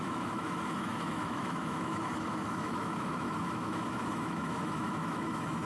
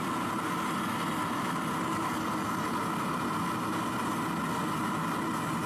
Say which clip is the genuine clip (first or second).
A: second